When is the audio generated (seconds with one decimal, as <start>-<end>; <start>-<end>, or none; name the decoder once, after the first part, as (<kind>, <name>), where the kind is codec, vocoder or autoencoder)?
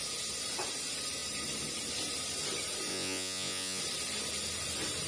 2.9-3.8 (vocoder, Vocos)